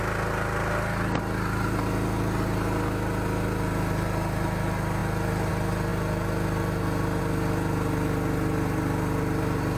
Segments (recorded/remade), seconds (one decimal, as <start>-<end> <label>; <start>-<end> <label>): 0.0-9.8 recorded